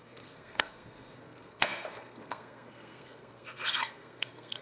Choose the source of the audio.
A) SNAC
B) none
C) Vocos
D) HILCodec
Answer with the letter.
A